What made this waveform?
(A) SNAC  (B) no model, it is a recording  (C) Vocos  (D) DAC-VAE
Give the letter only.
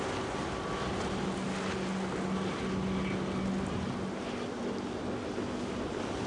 B